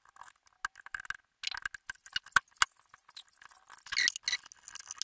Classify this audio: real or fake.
real